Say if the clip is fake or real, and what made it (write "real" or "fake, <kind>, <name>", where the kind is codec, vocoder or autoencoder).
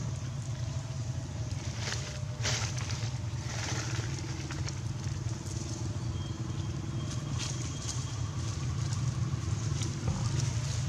real